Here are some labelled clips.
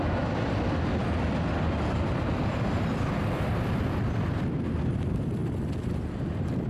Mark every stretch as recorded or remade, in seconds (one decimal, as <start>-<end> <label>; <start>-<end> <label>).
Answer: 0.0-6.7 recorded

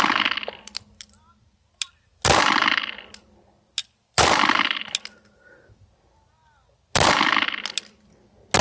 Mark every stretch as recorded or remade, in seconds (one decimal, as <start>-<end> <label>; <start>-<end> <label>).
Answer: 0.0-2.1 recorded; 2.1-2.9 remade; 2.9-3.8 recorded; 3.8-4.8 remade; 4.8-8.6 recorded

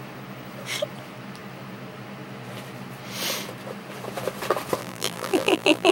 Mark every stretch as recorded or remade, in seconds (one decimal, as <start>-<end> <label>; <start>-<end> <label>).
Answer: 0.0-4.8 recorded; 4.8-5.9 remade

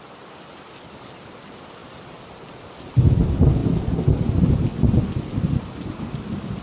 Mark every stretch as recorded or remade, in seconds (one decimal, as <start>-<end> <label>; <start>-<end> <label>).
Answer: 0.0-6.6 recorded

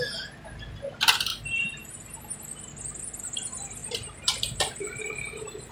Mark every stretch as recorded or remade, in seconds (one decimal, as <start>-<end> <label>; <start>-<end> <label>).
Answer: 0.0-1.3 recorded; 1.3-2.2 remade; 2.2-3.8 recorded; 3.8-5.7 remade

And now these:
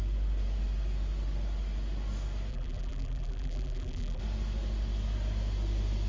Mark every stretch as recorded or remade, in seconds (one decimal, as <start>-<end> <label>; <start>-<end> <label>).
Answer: 0.0-2.5 recorded; 2.5-4.2 remade; 4.2-6.1 recorded